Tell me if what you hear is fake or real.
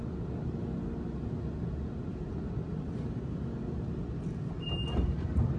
real